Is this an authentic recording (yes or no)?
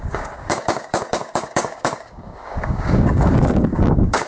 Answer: no